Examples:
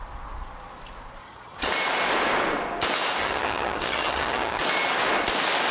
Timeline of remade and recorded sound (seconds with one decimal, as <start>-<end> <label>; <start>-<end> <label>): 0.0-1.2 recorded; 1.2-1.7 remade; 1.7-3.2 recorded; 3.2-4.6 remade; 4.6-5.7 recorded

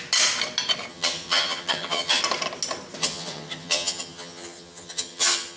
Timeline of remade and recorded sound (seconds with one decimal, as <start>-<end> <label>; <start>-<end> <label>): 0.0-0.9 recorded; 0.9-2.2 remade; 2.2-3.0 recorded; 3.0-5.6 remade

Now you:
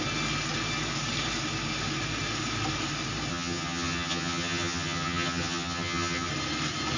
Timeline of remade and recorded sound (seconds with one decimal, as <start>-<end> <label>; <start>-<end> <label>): 0.0-3.3 recorded; 3.3-6.3 remade; 6.3-7.0 recorded

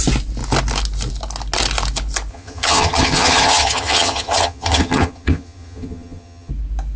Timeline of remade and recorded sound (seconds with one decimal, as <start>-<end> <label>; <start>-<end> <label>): 0.0-2.3 recorded; 2.3-6.5 remade; 6.5-7.0 recorded